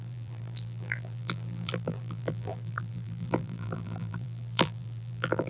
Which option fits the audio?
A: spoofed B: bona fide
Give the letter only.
A